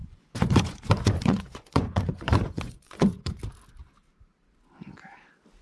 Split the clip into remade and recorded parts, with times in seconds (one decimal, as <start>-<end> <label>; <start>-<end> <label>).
0.0-3.4 remade; 3.4-5.6 recorded